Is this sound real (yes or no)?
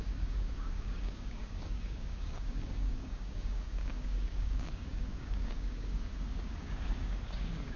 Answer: no